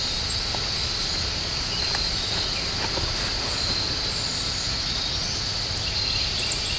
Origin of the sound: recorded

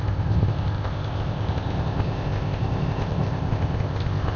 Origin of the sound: remade